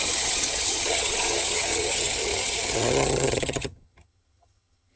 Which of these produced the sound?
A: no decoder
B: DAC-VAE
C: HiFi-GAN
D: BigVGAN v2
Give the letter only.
C